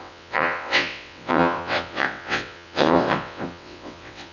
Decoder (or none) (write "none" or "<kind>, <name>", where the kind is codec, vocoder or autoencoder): vocoder, WaveNeXt